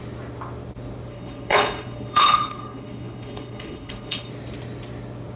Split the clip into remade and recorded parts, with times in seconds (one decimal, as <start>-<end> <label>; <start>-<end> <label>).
0.0-1.1 recorded; 1.1-4.3 remade; 4.3-5.4 recorded